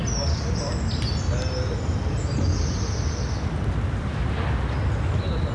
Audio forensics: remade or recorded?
recorded